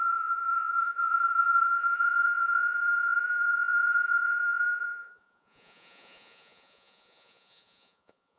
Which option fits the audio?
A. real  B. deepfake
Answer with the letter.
B